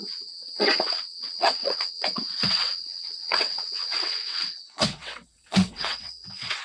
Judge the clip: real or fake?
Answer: fake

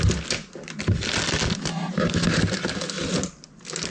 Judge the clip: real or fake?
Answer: real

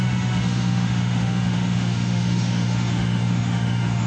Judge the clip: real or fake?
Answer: fake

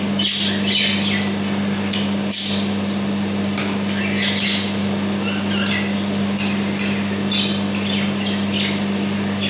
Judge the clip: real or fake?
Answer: real